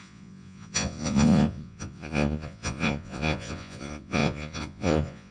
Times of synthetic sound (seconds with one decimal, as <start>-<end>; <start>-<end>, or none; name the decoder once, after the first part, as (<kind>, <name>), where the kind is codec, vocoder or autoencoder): 0.0-5.3 (vocoder, Vocos)